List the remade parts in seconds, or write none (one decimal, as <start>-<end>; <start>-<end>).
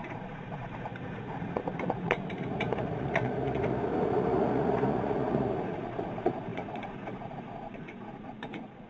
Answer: 0.0-8.9